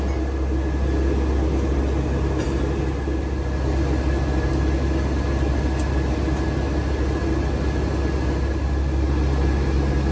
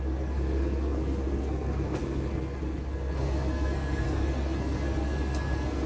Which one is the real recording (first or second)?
first